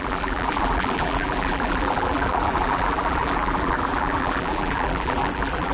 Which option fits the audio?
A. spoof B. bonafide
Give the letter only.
A